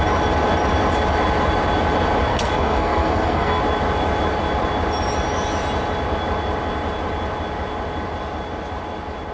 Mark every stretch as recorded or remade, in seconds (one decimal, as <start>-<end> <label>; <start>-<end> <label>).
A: 0.0-2.3 recorded; 2.3-3.6 remade; 3.6-9.3 recorded